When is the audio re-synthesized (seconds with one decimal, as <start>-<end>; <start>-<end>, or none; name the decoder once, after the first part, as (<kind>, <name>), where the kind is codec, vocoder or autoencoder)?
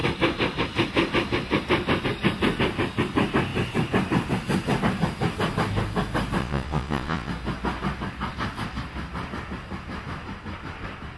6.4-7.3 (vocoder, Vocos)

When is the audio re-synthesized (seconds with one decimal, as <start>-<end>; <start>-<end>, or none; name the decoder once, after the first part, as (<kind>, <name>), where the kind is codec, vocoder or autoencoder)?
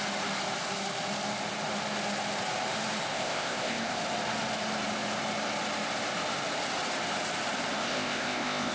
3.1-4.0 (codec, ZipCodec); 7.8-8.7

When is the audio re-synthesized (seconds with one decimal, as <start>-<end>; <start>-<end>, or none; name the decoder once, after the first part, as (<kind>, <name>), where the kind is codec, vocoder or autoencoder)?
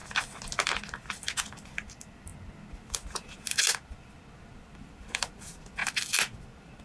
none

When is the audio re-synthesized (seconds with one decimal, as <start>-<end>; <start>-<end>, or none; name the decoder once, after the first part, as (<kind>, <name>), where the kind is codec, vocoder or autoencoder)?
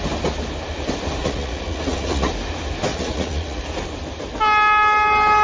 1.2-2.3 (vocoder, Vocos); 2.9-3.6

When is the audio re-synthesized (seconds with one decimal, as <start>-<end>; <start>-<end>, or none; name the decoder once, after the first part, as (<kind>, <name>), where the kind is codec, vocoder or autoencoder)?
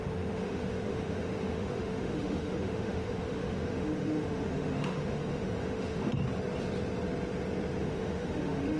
0.0-6.1 (autoencoder, DAC-VAE); 7.8-8.8